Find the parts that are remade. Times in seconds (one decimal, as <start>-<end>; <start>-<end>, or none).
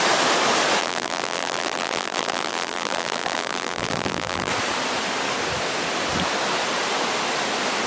0.8-4.5